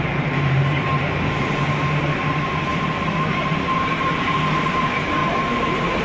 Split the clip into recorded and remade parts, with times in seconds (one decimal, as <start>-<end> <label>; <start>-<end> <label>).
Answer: 0.0-6.0 remade